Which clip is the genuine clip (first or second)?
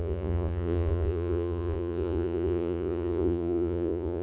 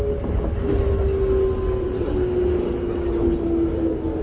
second